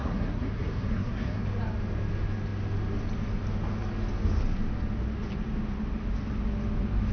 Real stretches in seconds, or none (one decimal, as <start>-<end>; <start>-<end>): 1.4-7.1